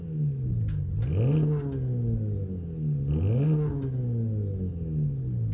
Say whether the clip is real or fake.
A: real